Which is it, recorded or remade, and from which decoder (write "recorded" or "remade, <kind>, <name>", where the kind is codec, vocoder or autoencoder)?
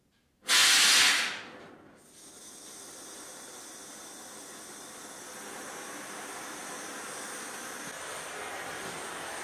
recorded